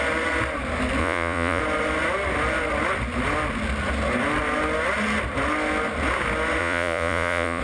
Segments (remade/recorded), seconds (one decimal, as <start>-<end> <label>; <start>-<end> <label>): 0.0-1.0 recorded; 1.0-1.6 remade; 1.6-6.6 recorded; 6.6-7.6 remade